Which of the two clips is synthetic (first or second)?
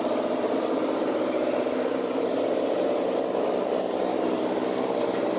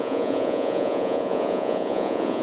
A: second